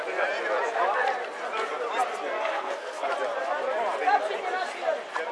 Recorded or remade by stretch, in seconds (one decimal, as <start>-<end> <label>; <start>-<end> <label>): 0.0-2.4 recorded; 2.4-3.1 remade; 3.1-5.3 recorded

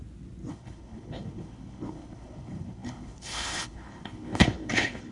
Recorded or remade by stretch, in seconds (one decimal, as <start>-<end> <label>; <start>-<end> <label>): 0.0-0.5 recorded; 0.5-5.1 remade

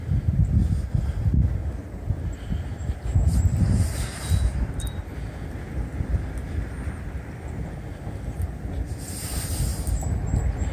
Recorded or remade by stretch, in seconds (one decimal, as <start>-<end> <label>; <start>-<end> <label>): 0.0-1.6 recorded; 1.6-5.3 remade; 5.3-10.7 recorded

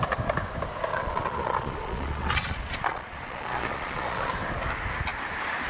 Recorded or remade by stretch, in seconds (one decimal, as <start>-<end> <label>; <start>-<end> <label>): 0.0-0.9 recorded; 0.9-4.3 remade; 4.3-5.7 recorded